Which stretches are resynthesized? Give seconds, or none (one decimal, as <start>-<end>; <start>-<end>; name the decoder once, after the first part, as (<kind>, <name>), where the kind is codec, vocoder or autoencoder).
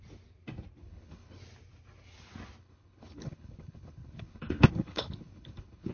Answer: 0.8-1.4 (codec, HILCodec); 2.6-5.9